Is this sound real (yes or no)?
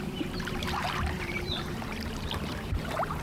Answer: no